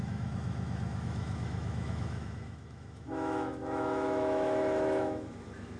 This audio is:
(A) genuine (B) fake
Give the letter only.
B